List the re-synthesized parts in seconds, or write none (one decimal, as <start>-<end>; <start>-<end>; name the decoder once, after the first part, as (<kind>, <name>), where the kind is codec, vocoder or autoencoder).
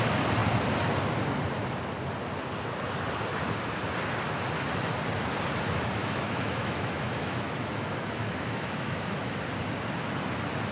6.0-9.4 (autoencoder, DAC-VAE)